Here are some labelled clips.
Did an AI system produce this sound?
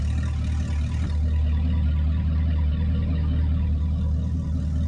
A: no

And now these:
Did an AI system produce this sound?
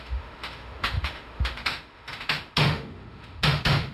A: yes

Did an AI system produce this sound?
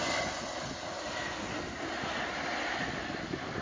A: no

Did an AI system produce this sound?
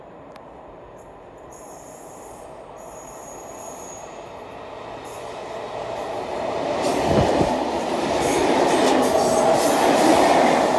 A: no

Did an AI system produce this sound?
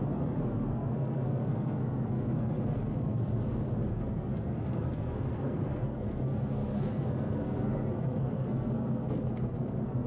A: yes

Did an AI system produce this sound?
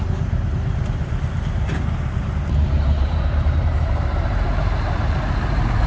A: yes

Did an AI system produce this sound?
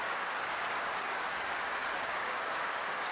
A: yes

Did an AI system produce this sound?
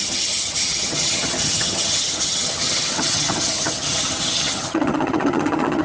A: yes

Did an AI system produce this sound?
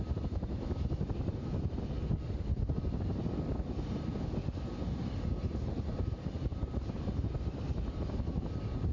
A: no